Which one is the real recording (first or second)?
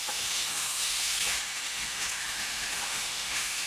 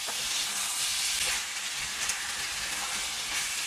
second